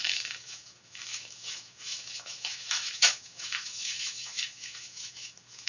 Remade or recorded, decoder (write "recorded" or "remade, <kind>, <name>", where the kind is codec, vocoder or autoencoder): remade, autoencoder, DAC-VAE